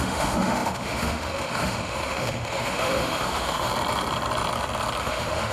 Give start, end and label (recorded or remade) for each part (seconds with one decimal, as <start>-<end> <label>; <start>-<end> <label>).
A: 0.0-3.7 remade; 3.7-5.0 recorded; 5.0-5.5 remade